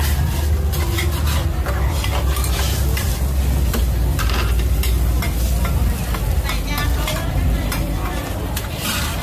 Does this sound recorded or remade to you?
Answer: recorded